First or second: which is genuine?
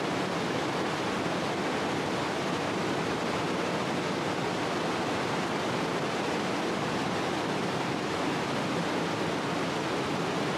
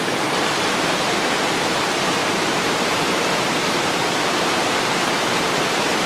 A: first